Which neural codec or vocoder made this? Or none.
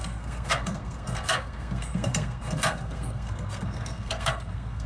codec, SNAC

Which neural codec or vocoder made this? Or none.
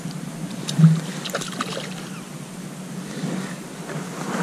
none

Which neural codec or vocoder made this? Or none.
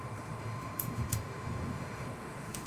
autoencoder, DAC-VAE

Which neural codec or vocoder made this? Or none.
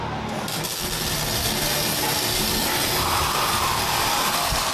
none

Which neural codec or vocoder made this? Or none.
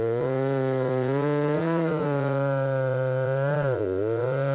vocoder, Vocos